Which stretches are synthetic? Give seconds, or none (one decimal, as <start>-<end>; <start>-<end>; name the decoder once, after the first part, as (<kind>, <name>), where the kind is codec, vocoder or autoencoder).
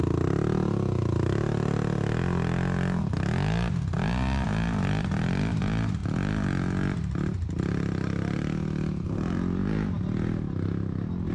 none